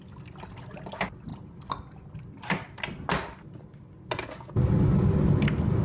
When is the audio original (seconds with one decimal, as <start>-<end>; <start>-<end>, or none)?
0.0-5.8

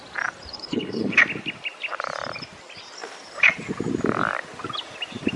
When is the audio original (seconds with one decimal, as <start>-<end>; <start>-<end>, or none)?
0.0-0.5; 1.2-5.4

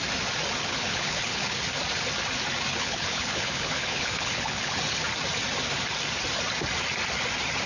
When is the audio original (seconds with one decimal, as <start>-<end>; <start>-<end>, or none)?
0.0-0.6; 1.6-2.7; 5.0-7.7

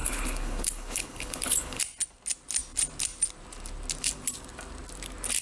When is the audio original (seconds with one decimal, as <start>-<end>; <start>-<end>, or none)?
1.8-5.4